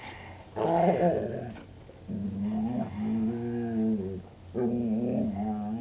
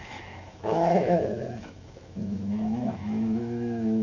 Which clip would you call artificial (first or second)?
second